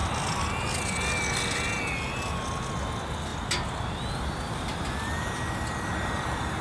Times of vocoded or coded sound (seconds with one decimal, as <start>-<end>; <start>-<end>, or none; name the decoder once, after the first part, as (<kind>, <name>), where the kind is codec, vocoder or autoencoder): none